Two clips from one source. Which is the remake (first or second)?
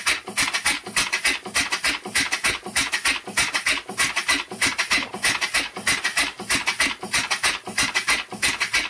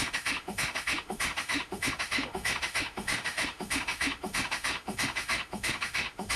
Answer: second